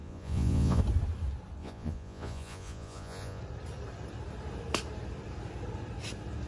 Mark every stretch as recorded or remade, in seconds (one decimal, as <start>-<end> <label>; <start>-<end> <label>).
0.0-0.8 remade; 0.8-1.6 recorded; 1.6-3.4 remade; 3.4-6.5 recorded